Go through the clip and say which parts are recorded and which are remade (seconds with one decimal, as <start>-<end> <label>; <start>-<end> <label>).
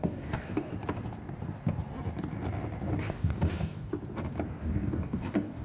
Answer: 0.0-0.7 remade; 0.7-3.0 recorded; 3.0-3.9 remade; 3.9-4.6 recorded; 4.6-5.6 remade